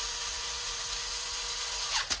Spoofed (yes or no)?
yes